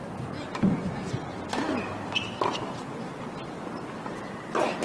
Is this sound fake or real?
real